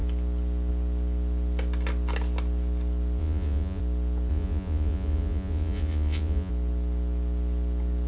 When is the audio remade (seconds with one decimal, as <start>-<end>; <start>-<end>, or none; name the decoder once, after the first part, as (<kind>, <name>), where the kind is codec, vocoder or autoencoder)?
3.2-3.8 (vocoder, Vocos); 4.3-6.5